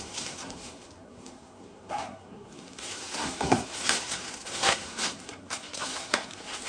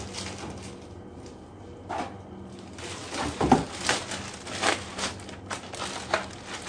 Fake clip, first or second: first